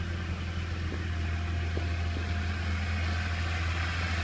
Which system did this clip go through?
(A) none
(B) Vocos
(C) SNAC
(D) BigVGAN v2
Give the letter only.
A